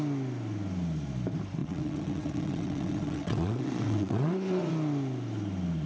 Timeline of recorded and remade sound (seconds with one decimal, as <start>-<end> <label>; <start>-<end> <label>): 0.0-1.6 recorded; 1.6-4.7 remade; 4.7-5.9 recorded